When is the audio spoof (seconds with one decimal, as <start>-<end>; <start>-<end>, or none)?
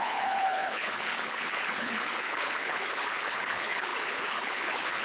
0.0-5.0